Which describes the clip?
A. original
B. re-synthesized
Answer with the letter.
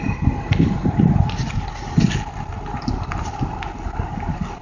A